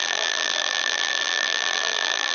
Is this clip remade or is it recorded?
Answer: remade